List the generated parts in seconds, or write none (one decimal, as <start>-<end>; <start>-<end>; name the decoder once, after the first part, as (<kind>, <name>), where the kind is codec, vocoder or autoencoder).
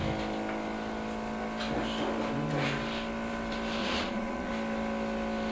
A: 3.8-4.5 (vocoder, Vocos)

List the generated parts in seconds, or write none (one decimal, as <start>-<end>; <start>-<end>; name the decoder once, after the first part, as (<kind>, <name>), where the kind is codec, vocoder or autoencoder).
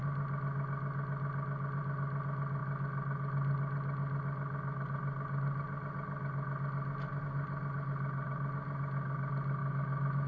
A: 9.6-10.3 (autoencoder, DAC-VAE)